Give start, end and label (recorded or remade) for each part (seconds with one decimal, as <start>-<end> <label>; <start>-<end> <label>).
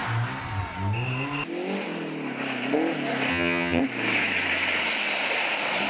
0.0-3.3 recorded; 3.3-3.8 remade; 3.8-5.9 recorded